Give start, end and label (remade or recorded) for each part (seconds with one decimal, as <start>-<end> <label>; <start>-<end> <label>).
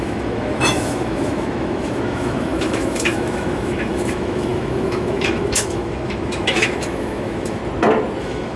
0.0-7.6 remade; 7.6-8.2 recorded; 8.2-8.6 remade